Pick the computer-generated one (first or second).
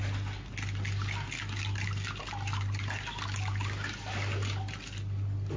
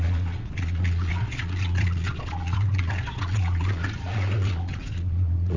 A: second